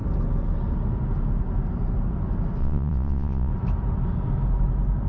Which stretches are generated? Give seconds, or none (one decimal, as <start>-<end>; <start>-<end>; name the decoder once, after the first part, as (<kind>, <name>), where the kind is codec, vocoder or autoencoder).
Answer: 2.6-3.5 (vocoder, Vocos)